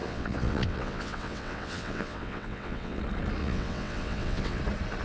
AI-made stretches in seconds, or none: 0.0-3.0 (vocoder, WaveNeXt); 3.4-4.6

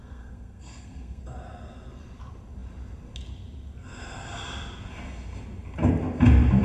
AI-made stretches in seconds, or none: 0.0-1.2 (codec, SNAC)

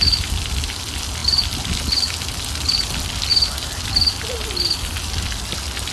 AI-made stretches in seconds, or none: none

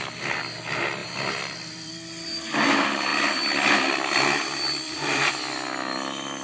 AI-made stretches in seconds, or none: 1.0-1.9 (vocoder, BigVGAN v2); 3.1-5.3

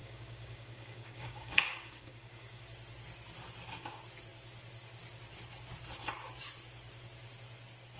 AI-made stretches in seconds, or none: 0.0-2.6 (codec, DAC)

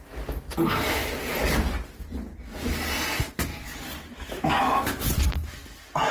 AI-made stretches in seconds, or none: 4.1-5.0 (autoencoder, DAC-VAE)

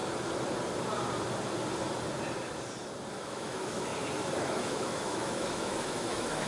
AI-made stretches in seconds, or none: 3.1-3.9 (autoencoder, DAC-VAE); 4.4-6.5

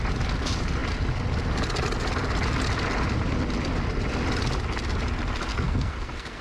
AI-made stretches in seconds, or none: 5.5-6.4 (codec, SNAC)